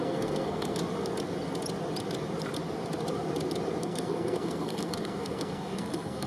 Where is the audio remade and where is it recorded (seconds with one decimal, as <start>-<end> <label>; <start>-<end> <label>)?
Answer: 0.0-0.8 remade; 0.8-3.8 recorded; 3.8-6.3 remade